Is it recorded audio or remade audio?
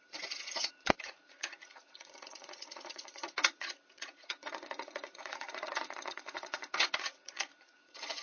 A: remade